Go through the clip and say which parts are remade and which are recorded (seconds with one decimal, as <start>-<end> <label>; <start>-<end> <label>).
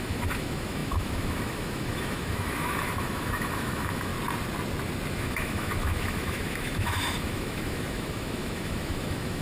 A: 0.0-4.1 remade; 4.1-5.1 recorded; 5.1-9.4 remade